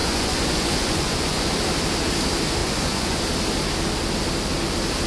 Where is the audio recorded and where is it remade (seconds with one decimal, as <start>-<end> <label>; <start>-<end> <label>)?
0.0-1.5 remade; 1.5-2.6 recorded; 2.6-3.2 remade; 3.2-5.1 recorded

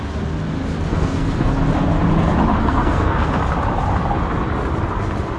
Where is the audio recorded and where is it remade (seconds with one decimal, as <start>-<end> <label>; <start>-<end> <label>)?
0.0-0.9 recorded; 0.9-1.5 remade; 1.5-2.6 recorded; 2.6-3.4 remade; 3.4-5.4 recorded

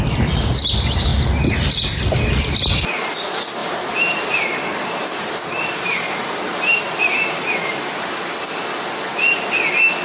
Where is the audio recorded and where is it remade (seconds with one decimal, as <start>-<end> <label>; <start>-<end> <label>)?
0.0-3.6 recorded; 3.6-8.1 remade; 8.1-10.0 recorded